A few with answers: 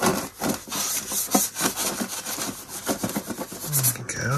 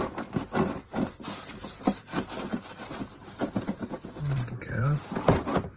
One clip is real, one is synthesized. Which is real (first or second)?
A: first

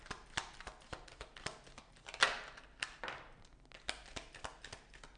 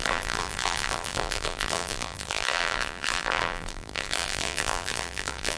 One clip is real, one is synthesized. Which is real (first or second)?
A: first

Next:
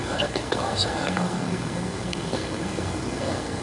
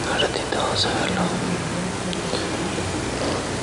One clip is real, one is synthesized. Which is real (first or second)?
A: second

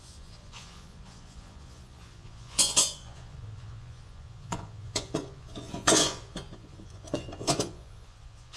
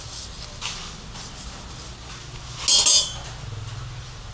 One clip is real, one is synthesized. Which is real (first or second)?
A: second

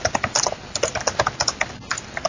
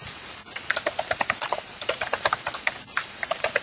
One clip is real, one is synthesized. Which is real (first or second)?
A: first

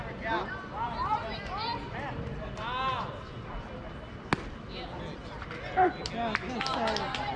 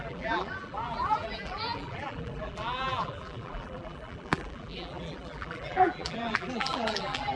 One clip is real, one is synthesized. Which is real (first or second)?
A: first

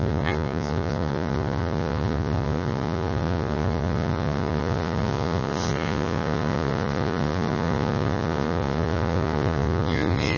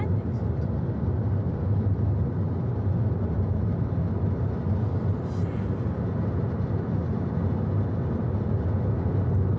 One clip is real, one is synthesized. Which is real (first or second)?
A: second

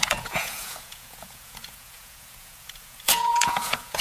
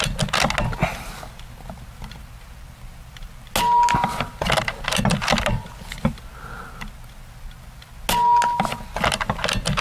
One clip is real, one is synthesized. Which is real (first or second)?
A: second